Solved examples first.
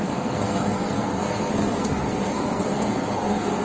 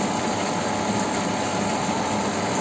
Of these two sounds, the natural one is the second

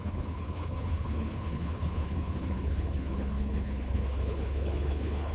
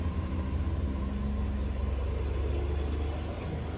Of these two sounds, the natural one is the second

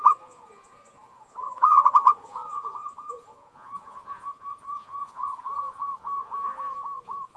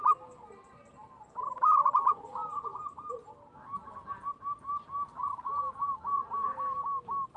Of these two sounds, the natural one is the second